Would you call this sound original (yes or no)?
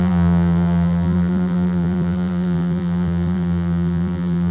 no